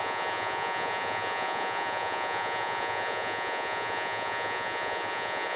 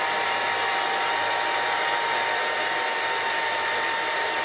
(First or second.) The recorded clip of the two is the second